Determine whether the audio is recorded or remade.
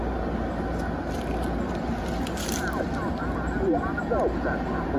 recorded